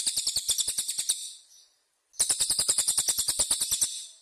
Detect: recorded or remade recorded